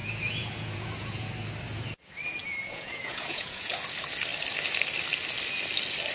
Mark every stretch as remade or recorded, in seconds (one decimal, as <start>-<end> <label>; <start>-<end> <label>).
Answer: 0.0-1.3 remade; 1.3-2.4 recorded; 2.4-3.7 remade; 3.7-6.1 recorded